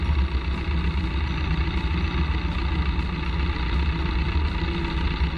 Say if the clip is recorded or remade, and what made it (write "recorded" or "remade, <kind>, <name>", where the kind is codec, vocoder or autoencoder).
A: recorded